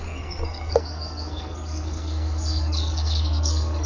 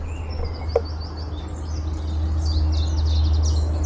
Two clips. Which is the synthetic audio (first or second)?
first